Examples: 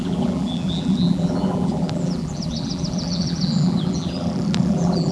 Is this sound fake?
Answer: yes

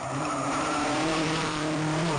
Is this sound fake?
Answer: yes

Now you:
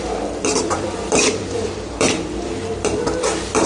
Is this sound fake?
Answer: yes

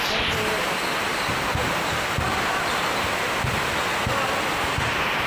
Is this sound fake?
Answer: no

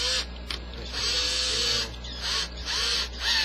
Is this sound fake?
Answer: no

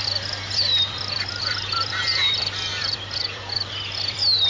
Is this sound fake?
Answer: yes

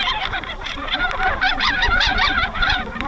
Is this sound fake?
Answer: yes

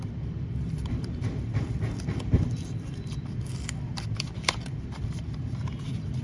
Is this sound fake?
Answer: yes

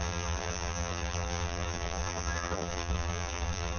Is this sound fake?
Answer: yes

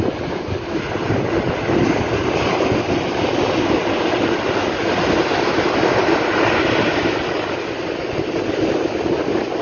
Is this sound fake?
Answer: no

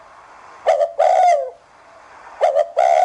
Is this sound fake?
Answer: yes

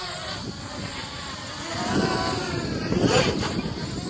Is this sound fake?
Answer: yes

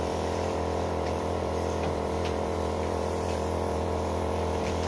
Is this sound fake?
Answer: yes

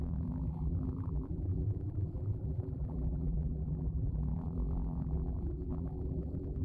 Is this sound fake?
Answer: yes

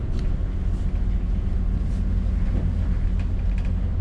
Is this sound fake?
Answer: no